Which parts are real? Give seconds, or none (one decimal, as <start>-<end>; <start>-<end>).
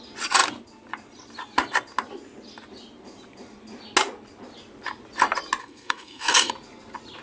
0.0-5.6; 6.5-7.2